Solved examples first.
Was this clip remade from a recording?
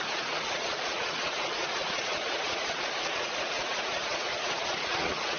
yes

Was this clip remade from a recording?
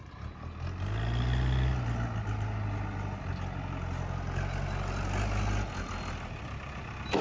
no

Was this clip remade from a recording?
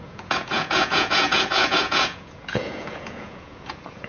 yes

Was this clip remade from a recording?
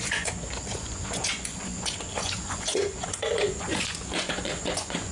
yes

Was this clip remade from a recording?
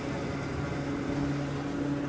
no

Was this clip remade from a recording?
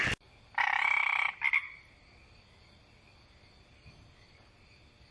no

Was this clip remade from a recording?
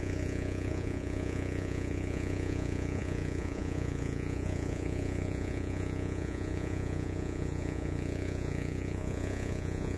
yes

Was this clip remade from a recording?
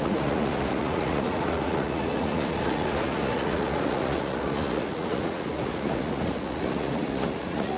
yes